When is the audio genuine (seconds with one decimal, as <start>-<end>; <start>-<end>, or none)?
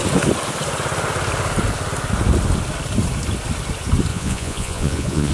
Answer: 0.0-4.1